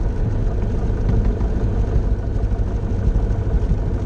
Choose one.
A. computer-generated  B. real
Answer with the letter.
B